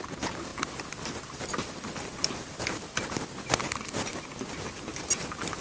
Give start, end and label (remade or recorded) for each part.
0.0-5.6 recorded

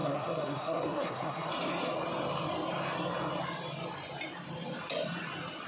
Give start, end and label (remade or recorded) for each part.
0.0-1.5 remade; 1.5-5.7 recorded